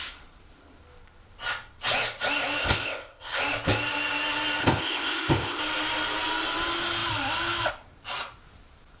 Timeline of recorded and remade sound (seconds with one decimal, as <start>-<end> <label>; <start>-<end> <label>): 0.0-2.6 recorded; 2.6-3.4 remade; 3.4-4.6 recorded; 4.6-5.6 remade; 5.6-9.0 recorded